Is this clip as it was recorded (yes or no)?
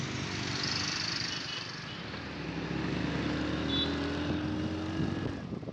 yes